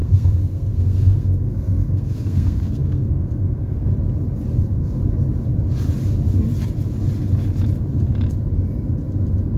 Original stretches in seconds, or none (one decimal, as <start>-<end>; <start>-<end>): 3.9-4.5; 5.0-9.6

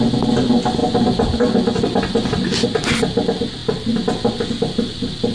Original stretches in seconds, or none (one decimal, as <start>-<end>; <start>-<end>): 0.0-5.3

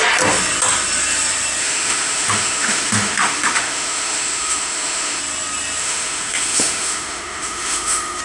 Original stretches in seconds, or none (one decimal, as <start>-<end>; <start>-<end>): 0.0-1.6; 5.2-5.8

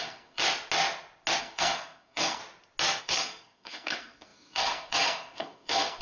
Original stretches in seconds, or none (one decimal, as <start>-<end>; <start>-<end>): 0.4-1.4; 2.4-3.0